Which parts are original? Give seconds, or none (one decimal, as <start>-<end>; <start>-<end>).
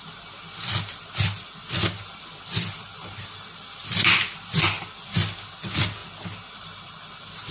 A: 0.0-7.5